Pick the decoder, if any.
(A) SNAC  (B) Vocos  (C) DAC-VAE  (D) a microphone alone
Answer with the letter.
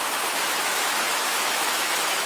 C